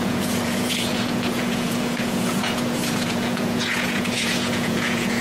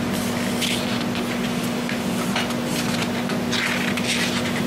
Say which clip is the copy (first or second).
first